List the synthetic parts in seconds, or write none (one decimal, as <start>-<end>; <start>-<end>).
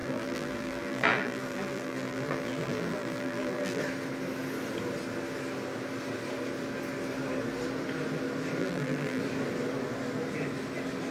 0.0-3.8; 8.6-9.2